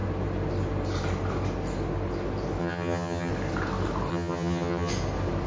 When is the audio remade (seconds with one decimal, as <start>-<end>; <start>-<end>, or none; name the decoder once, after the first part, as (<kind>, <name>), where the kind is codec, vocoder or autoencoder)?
2.6-3.3 (vocoder, HiFi-GAN); 4.1-4.9